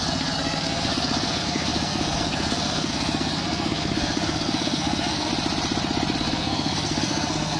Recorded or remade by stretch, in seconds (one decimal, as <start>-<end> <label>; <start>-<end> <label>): 0.0-5.3 remade; 5.3-6.2 recorded; 6.2-7.6 remade